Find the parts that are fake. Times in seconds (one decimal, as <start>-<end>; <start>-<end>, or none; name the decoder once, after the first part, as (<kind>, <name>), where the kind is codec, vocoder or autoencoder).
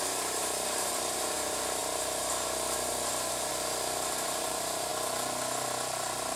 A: 0.0-4.9 (vocoder, BigVGAN v2)